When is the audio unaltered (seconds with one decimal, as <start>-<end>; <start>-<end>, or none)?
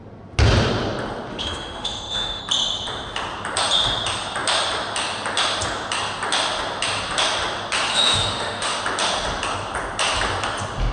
0.0-1.3; 2.4-7.9; 8.8-10.9